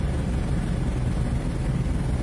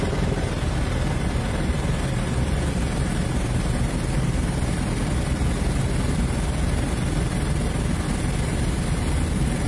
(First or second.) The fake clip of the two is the second